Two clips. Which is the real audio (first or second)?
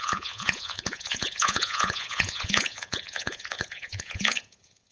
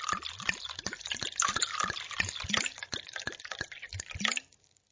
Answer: second